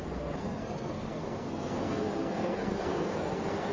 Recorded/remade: remade